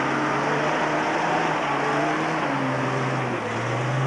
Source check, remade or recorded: recorded